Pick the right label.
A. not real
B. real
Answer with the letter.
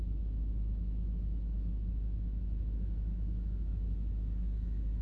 A